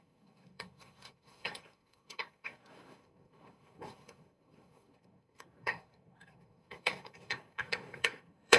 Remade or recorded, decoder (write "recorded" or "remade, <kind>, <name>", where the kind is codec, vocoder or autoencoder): remade, codec, SNAC